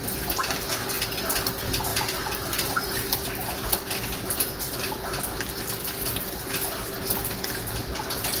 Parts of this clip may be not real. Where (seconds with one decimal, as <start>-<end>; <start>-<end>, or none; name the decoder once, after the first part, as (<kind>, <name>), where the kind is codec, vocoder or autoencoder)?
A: 1.9-3.7 (vocoder, BigVGAN v2)